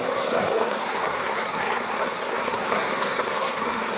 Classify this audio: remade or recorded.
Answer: remade